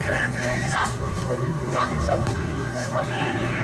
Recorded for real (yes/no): no